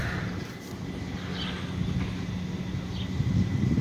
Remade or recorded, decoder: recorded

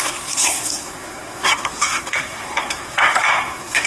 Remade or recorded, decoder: remade, codec, SNAC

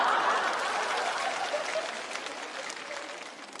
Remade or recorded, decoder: recorded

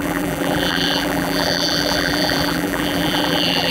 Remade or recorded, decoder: remade, vocoder, BigVGAN v2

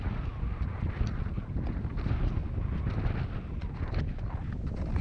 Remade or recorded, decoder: recorded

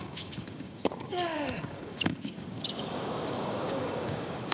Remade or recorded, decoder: remade, codec, DAC